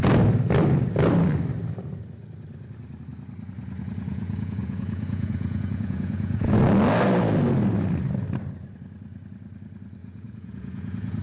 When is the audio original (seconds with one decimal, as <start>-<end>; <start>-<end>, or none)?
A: 0.0-4.1; 6.5-10.0